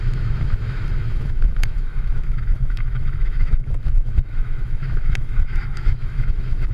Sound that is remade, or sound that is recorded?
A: remade